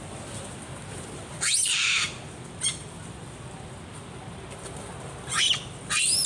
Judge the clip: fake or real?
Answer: real